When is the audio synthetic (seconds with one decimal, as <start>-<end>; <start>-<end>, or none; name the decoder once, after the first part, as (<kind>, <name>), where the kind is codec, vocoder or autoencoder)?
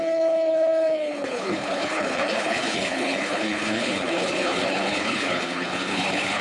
0.0-6.4 (codec, HILCodec)